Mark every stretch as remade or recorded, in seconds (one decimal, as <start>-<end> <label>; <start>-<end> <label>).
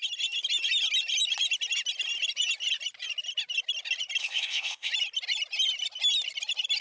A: 0.0-4.2 recorded; 4.2-4.9 remade; 4.9-6.8 recorded